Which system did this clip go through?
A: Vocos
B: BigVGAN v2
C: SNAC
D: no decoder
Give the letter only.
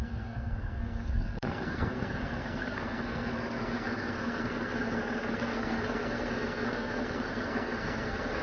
C